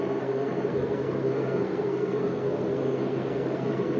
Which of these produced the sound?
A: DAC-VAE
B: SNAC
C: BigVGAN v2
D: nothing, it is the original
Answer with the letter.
B